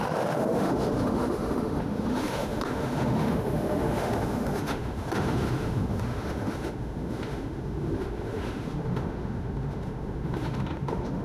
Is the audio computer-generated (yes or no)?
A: yes